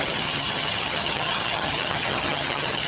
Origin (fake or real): fake